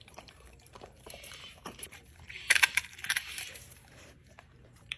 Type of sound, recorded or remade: remade